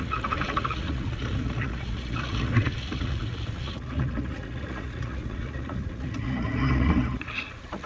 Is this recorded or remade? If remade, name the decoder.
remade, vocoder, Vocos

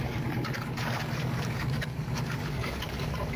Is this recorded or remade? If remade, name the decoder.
remade, codec, DAC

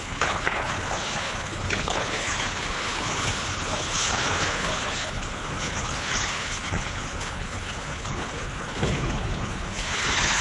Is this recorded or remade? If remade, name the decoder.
remade, codec, HILCodec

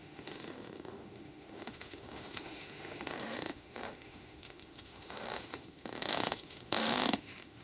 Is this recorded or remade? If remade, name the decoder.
remade, autoencoder, DAC-VAE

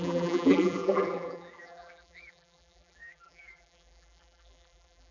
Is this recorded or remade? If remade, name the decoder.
remade, vocoder, BigVGAN v2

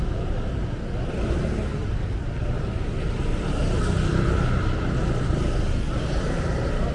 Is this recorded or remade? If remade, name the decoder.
recorded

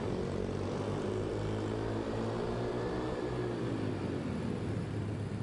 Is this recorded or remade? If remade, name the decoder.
recorded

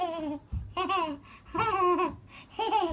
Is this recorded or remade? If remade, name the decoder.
recorded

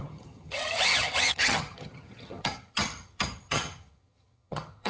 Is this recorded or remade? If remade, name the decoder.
remade, vocoder, HiFi-GAN